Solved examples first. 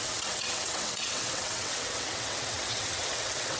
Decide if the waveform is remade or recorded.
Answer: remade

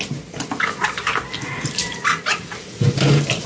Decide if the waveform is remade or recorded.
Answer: recorded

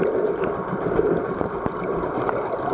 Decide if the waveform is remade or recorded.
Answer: recorded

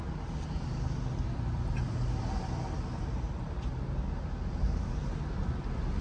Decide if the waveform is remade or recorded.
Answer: recorded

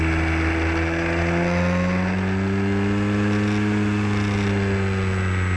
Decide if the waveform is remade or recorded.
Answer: recorded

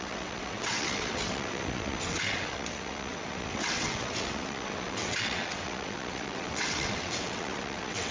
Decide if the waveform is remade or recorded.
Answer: remade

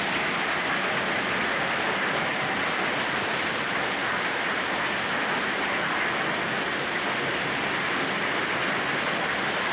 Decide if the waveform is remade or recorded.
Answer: recorded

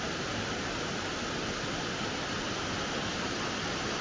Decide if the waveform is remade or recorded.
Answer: recorded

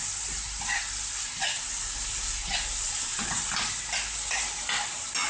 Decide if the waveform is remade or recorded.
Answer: recorded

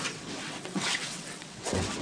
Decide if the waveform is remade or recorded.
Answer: remade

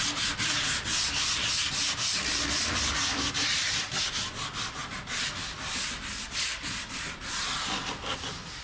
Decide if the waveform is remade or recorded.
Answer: recorded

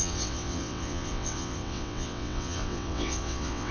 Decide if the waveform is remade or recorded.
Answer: remade